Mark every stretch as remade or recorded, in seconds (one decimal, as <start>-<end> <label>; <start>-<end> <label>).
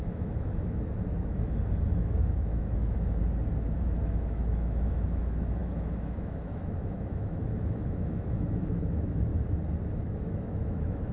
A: 0.0-3.2 remade; 3.2-3.8 recorded; 3.8-9.3 remade; 9.3-9.9 recorded; 9.9-11.1 remade